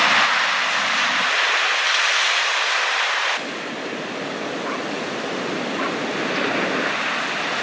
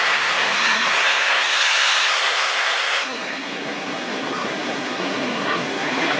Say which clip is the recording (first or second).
first